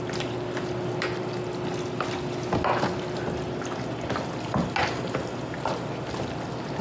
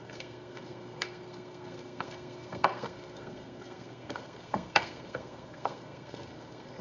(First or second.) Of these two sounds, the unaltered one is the first